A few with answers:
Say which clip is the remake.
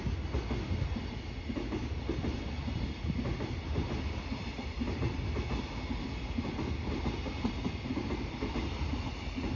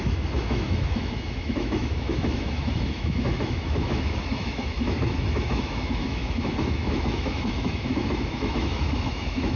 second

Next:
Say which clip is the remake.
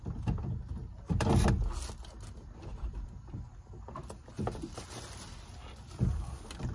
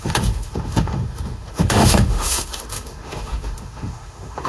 second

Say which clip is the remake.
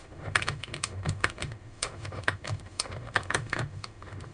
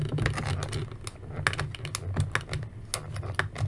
first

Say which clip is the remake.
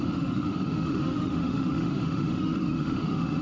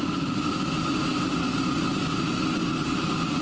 first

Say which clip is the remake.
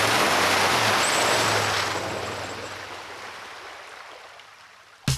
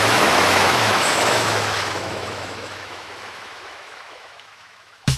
second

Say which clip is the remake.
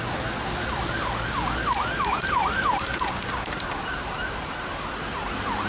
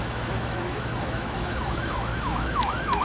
second